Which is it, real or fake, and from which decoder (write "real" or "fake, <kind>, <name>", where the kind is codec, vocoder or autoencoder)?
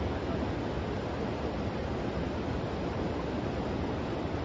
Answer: real